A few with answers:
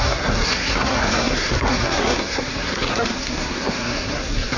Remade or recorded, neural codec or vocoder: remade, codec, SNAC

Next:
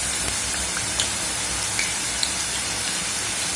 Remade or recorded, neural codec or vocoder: recorded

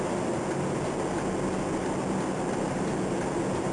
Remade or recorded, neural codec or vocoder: recorded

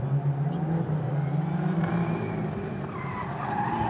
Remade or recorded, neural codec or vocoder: recorded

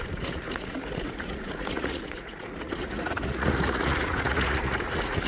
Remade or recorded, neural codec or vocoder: remade, vocoder, Vocos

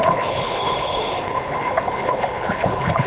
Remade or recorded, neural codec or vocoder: remade, codec, HILCodec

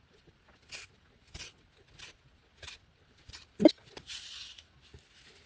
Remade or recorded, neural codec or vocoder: recorded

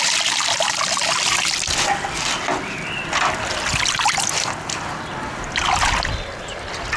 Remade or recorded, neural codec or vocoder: recorded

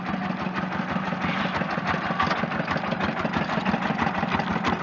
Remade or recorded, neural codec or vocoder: recorded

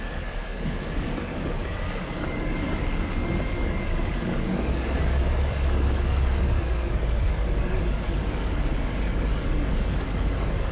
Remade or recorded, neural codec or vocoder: remade, codec, DAC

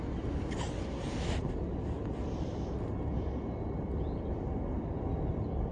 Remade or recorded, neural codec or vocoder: recorded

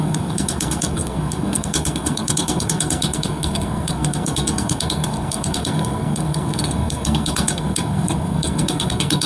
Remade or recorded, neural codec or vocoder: remade, codec, SNAC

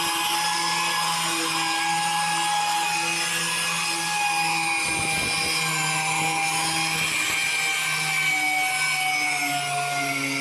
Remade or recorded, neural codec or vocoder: recorded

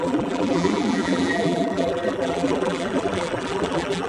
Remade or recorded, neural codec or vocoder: remade, vocoder, BigVGAN v2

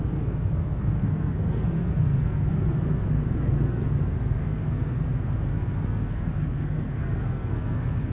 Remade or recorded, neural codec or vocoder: remade, codec, SNAC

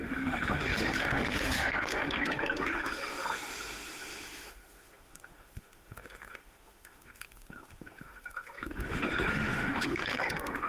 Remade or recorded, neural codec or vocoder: remade, autoencoder, DAC-VAE